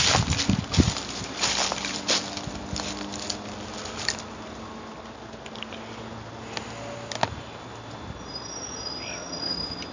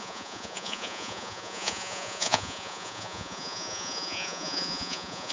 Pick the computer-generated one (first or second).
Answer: second